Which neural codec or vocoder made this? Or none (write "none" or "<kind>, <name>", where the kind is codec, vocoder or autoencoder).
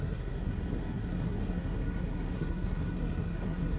codec, SNAC